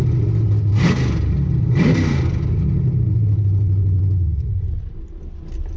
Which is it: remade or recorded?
recorded